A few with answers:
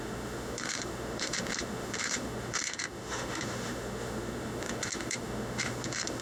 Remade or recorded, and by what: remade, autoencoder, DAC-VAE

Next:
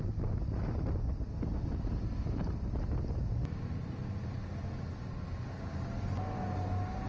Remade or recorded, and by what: recorded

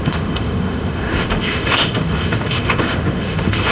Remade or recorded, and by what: remade, autoencoder, DAC-VAE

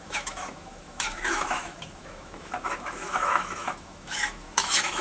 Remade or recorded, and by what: remade, autoencoder, DAC-VAE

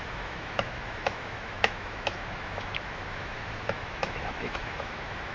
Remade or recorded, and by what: remade, autoencoder, DAC-VAE